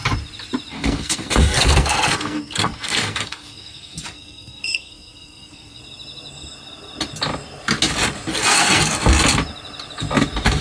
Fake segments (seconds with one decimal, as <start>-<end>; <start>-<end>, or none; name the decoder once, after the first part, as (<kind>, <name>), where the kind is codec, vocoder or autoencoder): 0.7-5.8 (codec, SNAC); 8.3-8.8